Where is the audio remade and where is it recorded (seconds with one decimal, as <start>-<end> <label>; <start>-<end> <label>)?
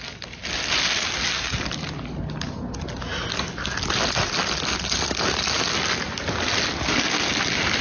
0.0-7.8 recorded